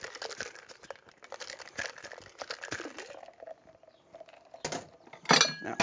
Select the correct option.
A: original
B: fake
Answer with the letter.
A